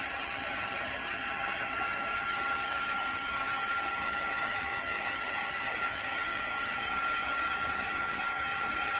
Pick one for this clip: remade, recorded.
remade